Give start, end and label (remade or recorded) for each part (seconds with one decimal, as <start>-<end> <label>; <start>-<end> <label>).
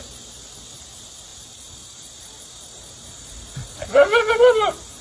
0.0-5.0 recorded